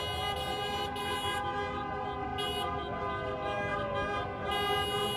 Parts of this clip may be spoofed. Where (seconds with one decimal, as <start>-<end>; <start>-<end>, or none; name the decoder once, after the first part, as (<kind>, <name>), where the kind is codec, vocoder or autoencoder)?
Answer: none